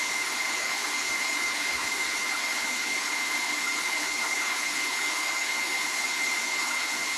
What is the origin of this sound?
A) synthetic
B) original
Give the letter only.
A